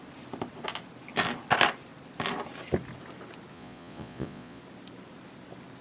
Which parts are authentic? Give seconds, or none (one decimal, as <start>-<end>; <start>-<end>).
0.0-3.5; 4.6-5.8

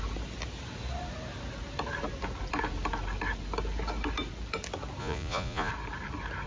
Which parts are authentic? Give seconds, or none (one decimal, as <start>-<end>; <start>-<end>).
0.0-5.0; 5.7-6.5

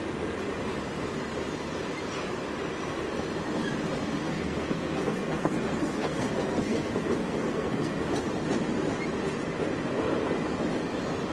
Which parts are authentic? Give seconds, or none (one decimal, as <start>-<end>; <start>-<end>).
0.0-4.2; 8.0-11.3

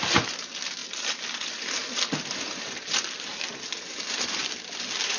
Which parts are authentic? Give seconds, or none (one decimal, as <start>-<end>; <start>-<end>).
0.0-5.2

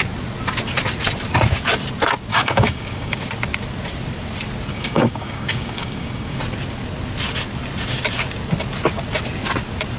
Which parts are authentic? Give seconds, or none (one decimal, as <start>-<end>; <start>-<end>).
0.0-2.3; 3.2-4.7; 6.4-10.0

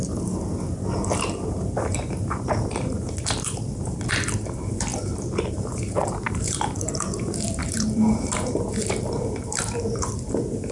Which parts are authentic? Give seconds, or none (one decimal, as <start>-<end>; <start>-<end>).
4.9-5.5

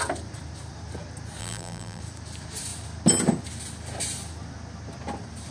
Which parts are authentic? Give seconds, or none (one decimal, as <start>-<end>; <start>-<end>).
0.0-1.4; 2.0-5.5

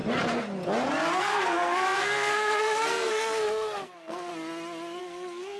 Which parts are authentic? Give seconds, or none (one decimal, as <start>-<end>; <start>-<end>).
0.0-1.2; 4.3-5.0